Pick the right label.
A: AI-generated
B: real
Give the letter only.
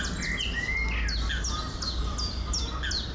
B